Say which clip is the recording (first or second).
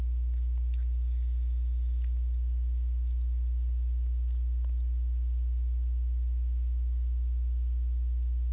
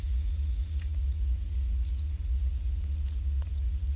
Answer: first